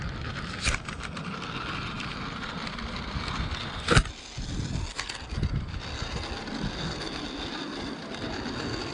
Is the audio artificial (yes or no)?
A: no